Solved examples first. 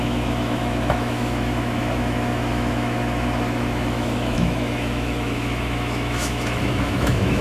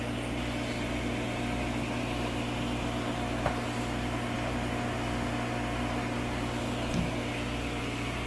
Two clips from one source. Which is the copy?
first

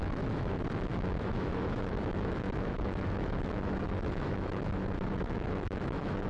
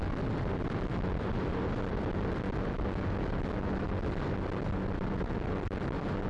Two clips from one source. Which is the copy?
first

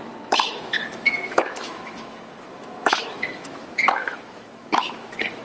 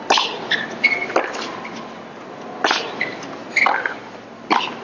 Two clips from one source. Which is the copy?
first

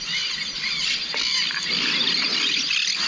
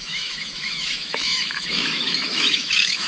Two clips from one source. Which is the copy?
second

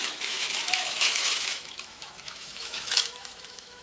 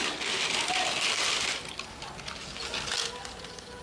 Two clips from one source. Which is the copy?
first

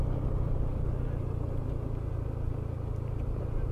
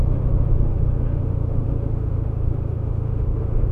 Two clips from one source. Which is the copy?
second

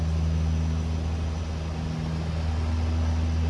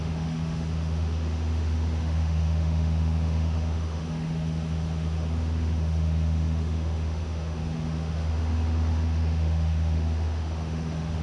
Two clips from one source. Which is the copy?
second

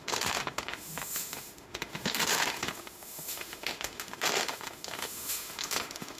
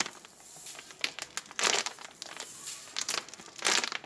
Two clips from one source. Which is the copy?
first